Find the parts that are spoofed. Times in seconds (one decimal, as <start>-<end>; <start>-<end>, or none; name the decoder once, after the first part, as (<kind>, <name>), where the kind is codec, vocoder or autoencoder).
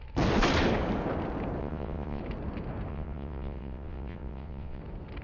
1.6-2.2 (vocoder, WaveNeXt); 2.9-4.8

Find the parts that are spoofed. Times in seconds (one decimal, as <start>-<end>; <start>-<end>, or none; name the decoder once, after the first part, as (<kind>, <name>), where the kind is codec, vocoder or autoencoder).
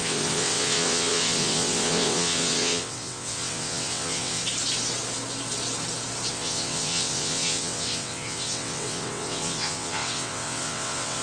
0.0-4.4 (vocoder, WaveNeXt); 6.3-11.2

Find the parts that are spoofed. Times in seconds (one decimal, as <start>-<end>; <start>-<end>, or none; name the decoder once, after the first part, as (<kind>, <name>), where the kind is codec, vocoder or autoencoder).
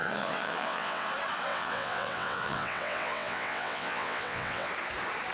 0.0-1.1 (vocoder, WaveNeXt); 1.5-4.7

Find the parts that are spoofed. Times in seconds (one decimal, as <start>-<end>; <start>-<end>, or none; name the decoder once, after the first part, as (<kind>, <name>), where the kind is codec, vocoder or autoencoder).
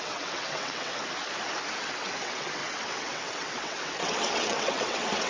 0.0-1.0 (vocoder, WaveNeXt); 1.8-5.3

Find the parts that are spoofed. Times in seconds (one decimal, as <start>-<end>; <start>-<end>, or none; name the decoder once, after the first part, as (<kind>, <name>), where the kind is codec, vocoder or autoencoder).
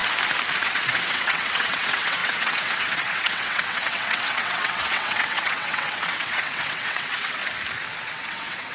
0.6-7.4 (vocoder, WaveNeXt); 8.0-8.7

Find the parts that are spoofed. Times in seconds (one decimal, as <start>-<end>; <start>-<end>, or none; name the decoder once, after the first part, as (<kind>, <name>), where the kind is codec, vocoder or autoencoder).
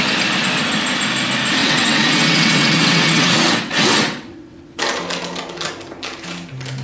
1.6-4.8 (vocoder, WaveNeXt)